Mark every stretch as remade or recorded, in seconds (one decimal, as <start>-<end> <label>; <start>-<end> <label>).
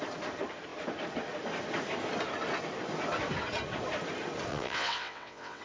0.0-4.5 recorded; 4.5-5.6 remade